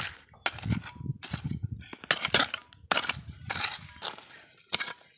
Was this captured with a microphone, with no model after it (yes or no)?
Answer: yes